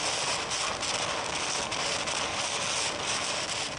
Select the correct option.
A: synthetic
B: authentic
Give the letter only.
B